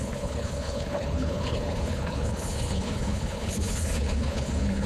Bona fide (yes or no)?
no